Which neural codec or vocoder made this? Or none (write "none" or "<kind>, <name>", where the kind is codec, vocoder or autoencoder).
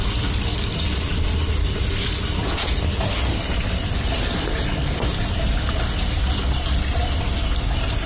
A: vocoder, BigVGAN v2